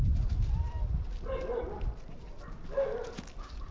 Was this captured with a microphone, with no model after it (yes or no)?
yes